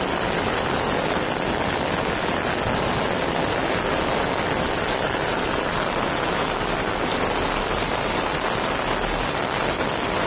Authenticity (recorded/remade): recorded